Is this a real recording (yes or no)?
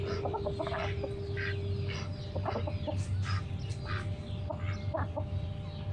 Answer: yes